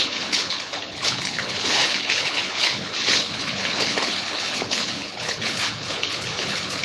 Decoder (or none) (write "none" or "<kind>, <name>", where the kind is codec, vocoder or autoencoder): codec, HILCodec